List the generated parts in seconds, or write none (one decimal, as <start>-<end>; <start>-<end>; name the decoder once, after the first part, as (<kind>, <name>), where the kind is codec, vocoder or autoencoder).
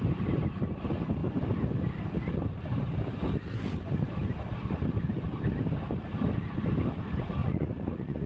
7.4-8.3 (vocoder, Vocos)